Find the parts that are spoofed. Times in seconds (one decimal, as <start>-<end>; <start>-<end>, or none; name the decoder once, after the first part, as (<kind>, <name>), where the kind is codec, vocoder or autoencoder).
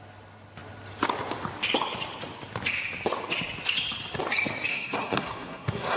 4.7-6.0 (codec, SNAC)